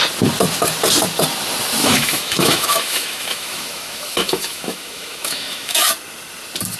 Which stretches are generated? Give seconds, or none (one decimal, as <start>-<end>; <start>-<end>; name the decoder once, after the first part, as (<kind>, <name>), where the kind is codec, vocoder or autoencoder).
1.8-5.9 (autoencoder, DAC-VAE)